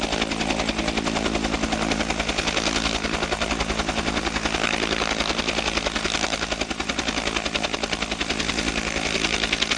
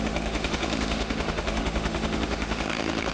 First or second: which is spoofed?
second